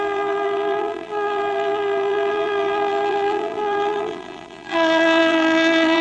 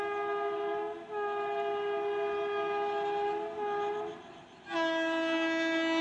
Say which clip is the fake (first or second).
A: first